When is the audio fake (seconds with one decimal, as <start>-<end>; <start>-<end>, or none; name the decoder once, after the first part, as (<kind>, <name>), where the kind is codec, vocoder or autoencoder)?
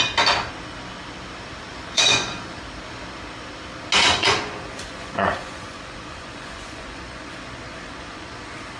1.7-2.6 (vocoder, Vocos); 4.0-8.4